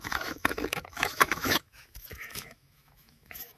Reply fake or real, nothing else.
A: fake